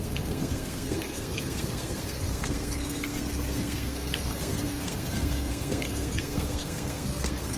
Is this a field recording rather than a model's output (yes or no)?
no